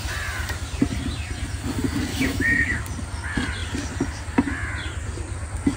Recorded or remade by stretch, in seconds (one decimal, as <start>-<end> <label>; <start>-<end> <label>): 0.0-2.1 recorded; 2.1-2.8 remade; 2.8-5.8 recorded